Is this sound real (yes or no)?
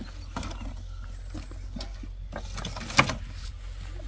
yes